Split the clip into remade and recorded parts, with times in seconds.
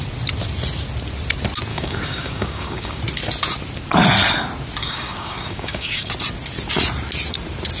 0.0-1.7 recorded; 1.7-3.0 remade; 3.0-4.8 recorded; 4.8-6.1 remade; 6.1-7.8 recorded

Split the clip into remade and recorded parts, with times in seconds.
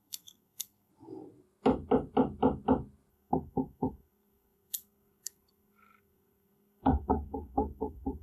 0.0-0.9 remade; 0.9-3.1 recorded; 3.1-8.2 remade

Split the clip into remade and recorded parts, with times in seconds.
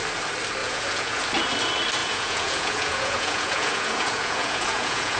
0.0-0.6 recorded; 0.6-1.2 remade; 1.2-2.0 recorded; 2.0-5.2 remade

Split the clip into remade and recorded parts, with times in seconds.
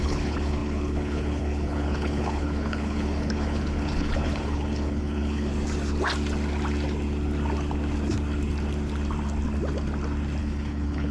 0.0-5.5 remade; 5.5-10.4 recorded; 10.4-11.1 remade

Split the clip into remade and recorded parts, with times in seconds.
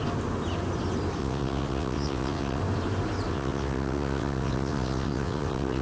0.0-1.2 recorded; 1.2-2.6 remade; 2.6-3.3 recorded; 3.3-5.8 remade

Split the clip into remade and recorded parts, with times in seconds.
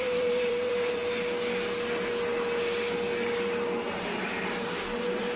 0.0-1.0 remade; 1.0-4.2 recorded; 4.2-5.4 remade